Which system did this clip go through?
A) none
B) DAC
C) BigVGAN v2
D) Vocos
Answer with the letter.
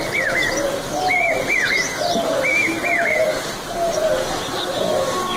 C